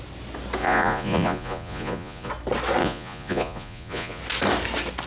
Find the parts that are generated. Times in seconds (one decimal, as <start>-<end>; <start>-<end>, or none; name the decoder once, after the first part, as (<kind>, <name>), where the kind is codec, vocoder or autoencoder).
0.6-2.3 (vocoder, Vocos); 2.8-4.2